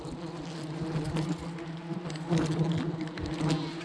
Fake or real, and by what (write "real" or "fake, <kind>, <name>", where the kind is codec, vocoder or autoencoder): real